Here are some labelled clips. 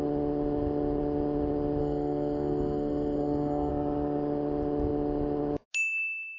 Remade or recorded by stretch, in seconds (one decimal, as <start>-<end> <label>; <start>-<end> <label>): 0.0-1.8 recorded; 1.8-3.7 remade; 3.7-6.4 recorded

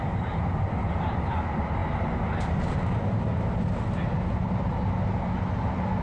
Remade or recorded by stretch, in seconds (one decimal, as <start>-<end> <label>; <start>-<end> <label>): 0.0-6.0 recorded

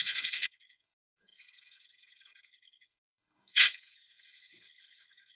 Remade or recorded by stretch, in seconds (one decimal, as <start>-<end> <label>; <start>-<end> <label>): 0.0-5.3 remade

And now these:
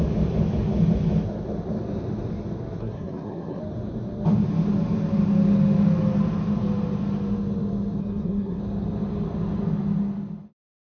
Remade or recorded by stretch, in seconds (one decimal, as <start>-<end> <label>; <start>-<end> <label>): 0.0-2.8 recorded; 2.8-3.6 remade; 3.6-8.0 recorded; 8.0-8.6 remade; 8.6-10.8 recorded